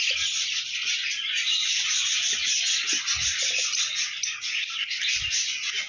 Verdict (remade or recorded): recorded